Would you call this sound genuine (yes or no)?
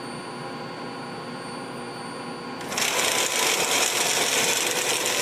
yes